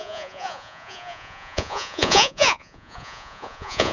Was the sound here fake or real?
fake